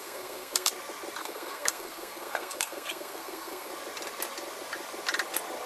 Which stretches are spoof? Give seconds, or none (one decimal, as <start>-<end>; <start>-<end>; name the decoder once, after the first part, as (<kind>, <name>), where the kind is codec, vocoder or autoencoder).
0.0-0.7 (codec, SNAC); 1.2-3.7